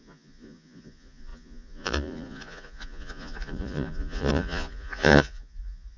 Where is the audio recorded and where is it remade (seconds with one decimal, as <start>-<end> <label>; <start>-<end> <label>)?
0.0-6.0 remade

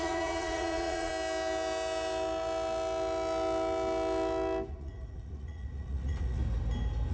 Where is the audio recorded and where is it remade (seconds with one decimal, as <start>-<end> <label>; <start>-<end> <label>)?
0.0-1.1 remade; 1.1-4.7 recorded; 4.7-6.4 remade; 6.4-7.1 recorded

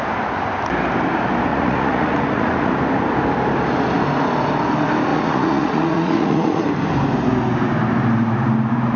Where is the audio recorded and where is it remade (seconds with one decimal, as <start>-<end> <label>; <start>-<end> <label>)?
0.0-1.5 recorded; 1.5-2.7 remade; 2.7-5.1 recorded; 5.1-6.6 remade; 6.6-9.0 recorded

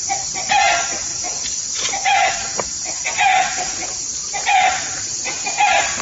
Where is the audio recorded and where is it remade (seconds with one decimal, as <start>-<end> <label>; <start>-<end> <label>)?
0.0-1.1 recorded; 1.1-2.3 remade; 2.3-6.0 recorded

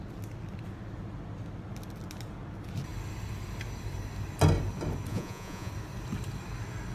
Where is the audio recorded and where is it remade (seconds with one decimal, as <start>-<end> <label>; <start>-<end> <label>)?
0.0-5.1 recorded; 5.1-5.7 remade; 5.7-6.9 recorded